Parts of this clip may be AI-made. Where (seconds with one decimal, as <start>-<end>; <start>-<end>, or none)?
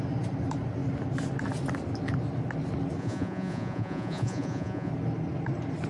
3.0-4.9